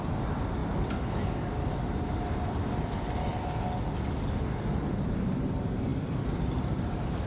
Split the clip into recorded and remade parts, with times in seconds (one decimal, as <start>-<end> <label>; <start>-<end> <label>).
0.0-0.6 remade; 0.6-4.9 recorded; 4.9-7.3 remade